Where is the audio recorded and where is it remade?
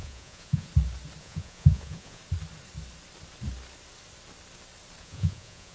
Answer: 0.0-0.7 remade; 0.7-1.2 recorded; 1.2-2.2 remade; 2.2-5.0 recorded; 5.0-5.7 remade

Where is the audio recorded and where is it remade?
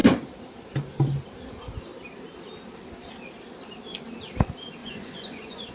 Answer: 0.0-4.8 recorded; 4.8-5.7 remade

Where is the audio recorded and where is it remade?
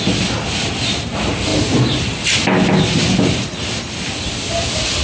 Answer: 0.0-5.0 recorded